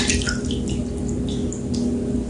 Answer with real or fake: real